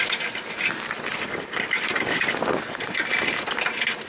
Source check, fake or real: real